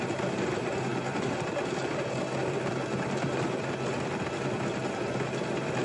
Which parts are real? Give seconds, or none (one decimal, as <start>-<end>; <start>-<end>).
0.0-5.8